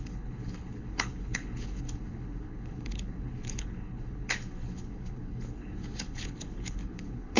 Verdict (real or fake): fake